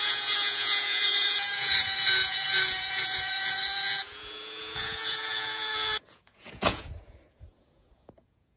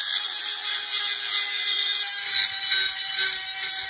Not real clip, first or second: first